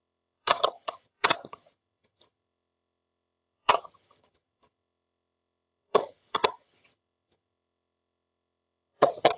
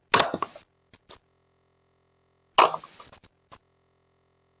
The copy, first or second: first